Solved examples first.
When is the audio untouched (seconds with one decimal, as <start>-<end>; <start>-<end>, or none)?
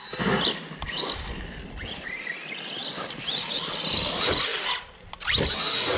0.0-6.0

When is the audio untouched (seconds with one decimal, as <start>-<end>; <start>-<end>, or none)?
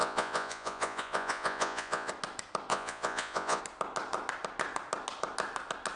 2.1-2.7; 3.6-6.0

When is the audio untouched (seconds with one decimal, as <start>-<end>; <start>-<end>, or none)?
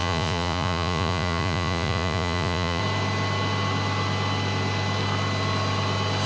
2.8-6.3